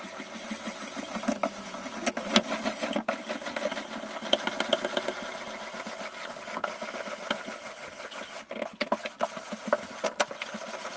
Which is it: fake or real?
real